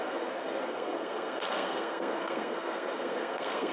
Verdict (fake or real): fake